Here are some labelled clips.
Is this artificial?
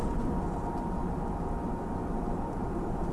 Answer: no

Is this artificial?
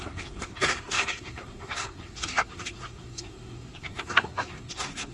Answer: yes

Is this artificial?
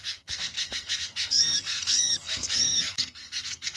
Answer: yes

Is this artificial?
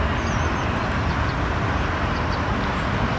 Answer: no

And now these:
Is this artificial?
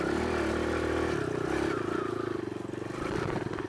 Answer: no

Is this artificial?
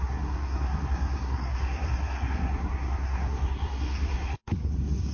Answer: yes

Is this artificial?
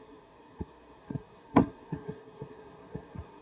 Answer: yes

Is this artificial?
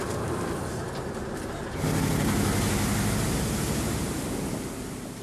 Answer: no